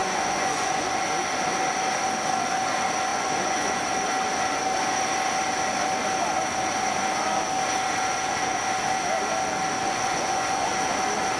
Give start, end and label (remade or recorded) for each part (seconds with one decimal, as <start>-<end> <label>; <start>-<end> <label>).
0.0-1.0 remade; 1.0-3.1 recorded; 3.1-3.8 remade; 3.8-9.8 recorded; 9.8-10.7 remade; 10.7-11.4 recorded